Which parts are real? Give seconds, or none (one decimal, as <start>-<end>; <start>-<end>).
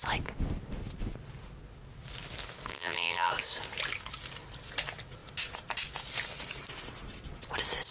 0.0-2.7; 3.3-7.9